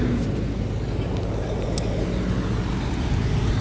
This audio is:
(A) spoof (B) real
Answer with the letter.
B